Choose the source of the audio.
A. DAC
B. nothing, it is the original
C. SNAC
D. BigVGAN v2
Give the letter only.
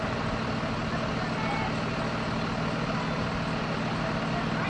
B